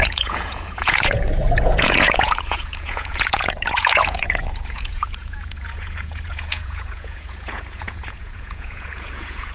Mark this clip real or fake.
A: fake